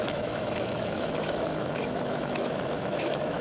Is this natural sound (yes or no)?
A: no